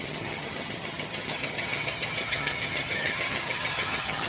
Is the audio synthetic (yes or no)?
yes